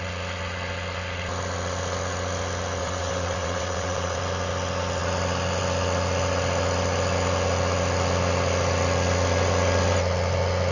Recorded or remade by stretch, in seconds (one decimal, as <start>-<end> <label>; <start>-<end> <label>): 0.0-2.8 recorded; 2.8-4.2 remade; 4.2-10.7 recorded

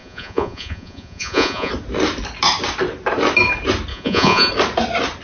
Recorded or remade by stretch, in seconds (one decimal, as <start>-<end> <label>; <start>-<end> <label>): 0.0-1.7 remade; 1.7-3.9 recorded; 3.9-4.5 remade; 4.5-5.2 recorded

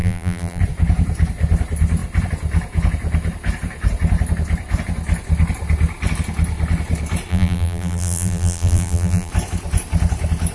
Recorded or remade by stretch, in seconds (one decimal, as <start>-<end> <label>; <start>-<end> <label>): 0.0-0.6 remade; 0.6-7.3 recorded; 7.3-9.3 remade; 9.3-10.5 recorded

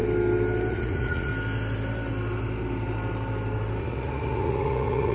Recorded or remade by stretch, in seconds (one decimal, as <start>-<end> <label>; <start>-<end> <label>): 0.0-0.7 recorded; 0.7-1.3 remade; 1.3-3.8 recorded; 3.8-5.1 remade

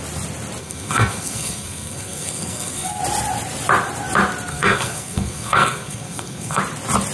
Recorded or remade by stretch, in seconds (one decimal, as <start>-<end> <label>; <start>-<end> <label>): 0.0-0.6 recorded; 0.6-3.0 remade; 3.0-4.5 recorded; 4.5-6.6 remade; 6.6-7.1 recorded

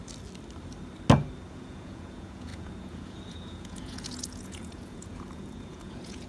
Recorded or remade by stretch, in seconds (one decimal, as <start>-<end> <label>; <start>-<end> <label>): 0.0-1.5 recorded; 1.5-6.3 remade